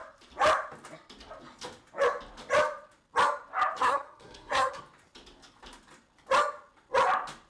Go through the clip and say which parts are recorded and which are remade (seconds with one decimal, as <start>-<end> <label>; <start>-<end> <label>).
0.0-3.8 recorded; 3.8-4.8 remade; 4.8-7.5 recorded